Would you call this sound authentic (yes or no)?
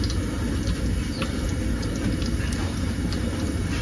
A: yes